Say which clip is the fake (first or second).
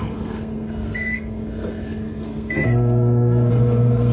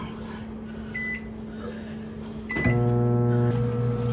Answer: first